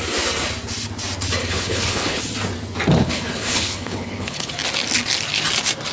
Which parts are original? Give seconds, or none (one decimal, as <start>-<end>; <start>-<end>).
0.0-1.4; 2.2-3.0; 4.5-5.9